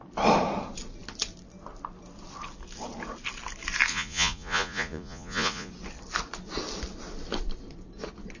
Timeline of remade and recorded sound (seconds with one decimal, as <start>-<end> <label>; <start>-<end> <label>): 0.0-3.9 recorded; 3.9-5.7 remade; 5.7-8.4 recorded